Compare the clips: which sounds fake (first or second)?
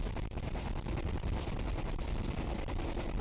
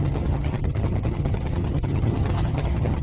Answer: second